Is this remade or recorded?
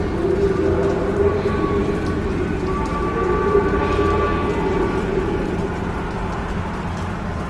recorded